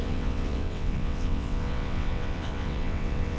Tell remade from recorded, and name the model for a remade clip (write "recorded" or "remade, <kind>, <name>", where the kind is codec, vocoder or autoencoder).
remade, vocoder, WaveNeXt